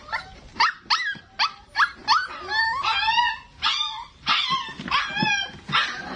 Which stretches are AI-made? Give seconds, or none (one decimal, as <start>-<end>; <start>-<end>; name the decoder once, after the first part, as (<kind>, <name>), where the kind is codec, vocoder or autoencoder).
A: none